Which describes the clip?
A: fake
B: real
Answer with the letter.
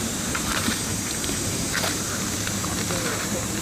A